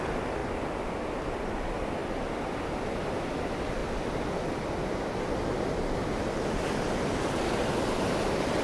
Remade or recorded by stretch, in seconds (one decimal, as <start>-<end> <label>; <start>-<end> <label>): 0.0-0.4 remade; 0.4-1.3 recorded; 1.3-3.8 remade; 3.8-6.1 recorded; 6.1-8.6 remade